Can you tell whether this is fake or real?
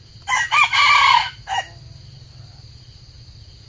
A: real